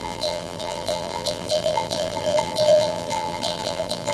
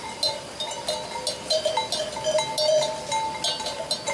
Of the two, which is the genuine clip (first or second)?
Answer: second